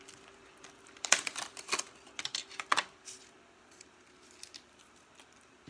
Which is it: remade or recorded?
recorded